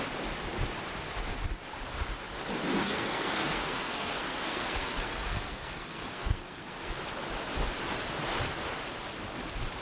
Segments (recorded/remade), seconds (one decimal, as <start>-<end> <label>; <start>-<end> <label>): 0.0-2.8 recorded; 2.8-6.9 remade; 6.9-9.8 recorded